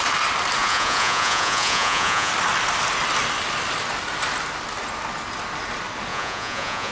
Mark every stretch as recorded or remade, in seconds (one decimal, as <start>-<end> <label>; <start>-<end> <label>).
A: 0.0-0.6 recorded; 0.6-2.3 remade; 2.3-6.1 recorded; 6.1-6.9 remade